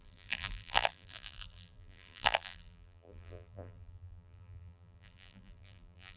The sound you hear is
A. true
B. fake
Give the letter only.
B